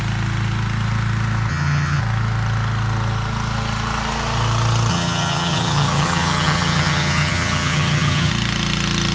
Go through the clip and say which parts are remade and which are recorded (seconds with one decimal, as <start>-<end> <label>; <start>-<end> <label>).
0.0-1.5 recorded; 1.5-2.0 remade; 2.0-4.9 recorded; 4.9-8.3 remade; 8.3-9.1 recorded